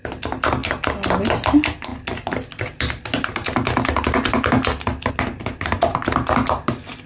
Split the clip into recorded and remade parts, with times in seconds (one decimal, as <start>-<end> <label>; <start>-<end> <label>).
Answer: 0.0-7.1 recorded